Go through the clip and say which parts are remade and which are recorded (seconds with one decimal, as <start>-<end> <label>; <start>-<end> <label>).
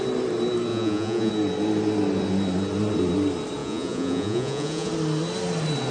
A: 0.0-0.7 recorded; 0.7-1.3 remade; 1.3-3.6 recorded; 3.6-4.9 remade; 4.9-5.9 recorded